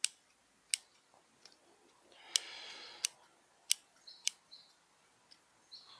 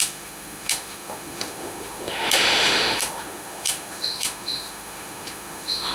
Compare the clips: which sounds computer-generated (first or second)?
second